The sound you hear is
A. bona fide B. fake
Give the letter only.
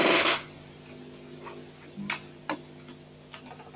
A